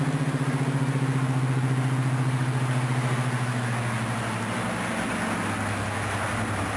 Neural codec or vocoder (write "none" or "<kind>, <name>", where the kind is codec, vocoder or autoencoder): none